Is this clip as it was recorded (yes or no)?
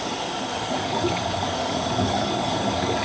no